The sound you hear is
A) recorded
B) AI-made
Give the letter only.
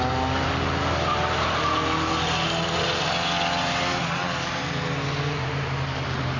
A